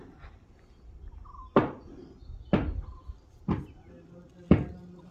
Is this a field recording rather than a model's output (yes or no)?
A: yes